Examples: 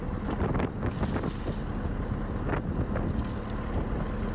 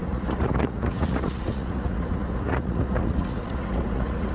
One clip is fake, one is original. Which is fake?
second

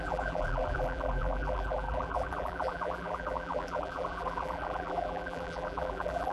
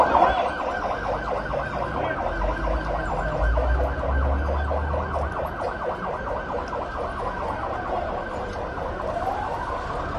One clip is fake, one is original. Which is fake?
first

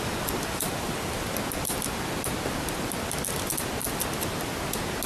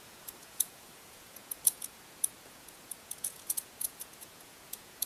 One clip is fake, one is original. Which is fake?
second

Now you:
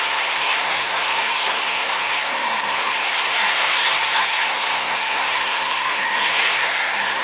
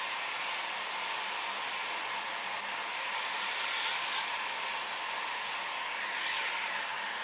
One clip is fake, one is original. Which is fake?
first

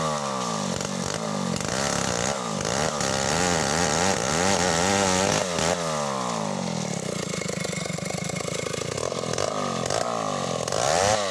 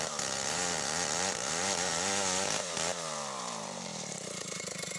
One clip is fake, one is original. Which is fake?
second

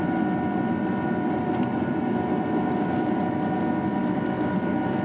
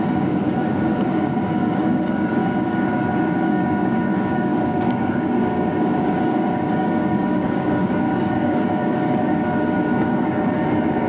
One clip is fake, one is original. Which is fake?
second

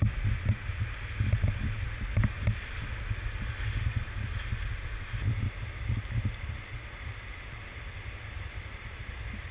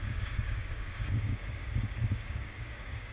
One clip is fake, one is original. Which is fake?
second